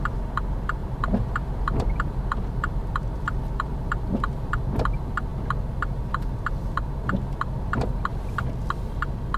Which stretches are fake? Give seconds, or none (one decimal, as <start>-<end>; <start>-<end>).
0.8-4.5